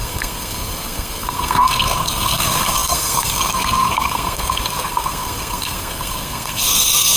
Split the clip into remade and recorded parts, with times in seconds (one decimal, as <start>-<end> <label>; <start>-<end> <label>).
0.0-7.2 remade